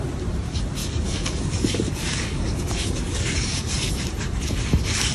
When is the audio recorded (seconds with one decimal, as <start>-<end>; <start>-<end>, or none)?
0.0-0.8; 3.9-5.1